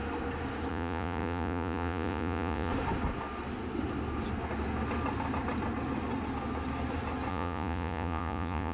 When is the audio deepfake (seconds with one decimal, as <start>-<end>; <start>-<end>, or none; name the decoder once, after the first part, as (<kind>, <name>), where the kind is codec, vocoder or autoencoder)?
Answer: 0.7-2.7 (vocoder, Vocos); 7.3-8.7